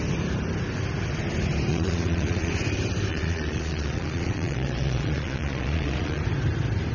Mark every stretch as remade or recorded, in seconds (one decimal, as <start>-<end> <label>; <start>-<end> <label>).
0.0-1.7 recorded; 1.7-2.5 remade; 2.5-3.1 recorded; 3.1-6.2 remade; 6.2-6.9 recorded